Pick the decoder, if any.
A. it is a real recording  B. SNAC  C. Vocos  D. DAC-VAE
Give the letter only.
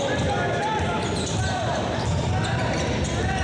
A